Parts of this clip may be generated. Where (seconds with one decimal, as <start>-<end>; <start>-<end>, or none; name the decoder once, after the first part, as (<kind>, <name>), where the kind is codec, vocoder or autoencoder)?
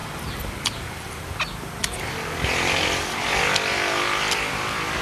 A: 0.0-1.3 (vocoder, BigVGAN v2)